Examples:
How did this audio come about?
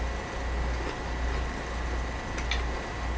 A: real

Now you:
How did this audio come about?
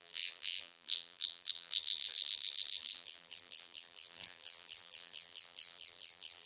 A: fake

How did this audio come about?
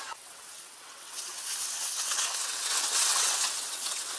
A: fake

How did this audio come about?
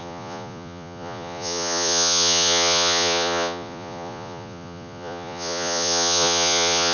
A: fake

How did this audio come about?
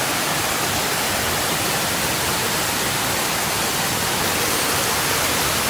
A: real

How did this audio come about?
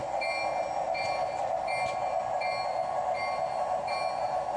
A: real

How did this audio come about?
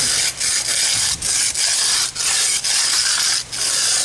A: real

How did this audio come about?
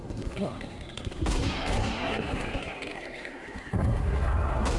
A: fake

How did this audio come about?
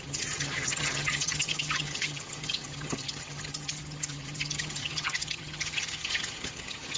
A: fake